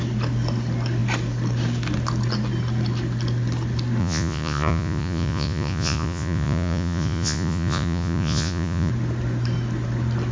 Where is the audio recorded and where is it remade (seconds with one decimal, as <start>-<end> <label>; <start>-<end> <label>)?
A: 0.0-4.0 recorded; 4.0-8.9 remade; 8.9-10.3 recorded